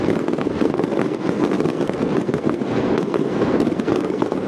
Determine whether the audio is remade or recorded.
remade